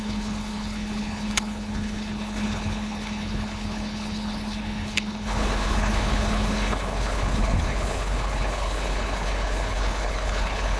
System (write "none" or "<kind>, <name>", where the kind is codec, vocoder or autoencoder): codec, HILCodec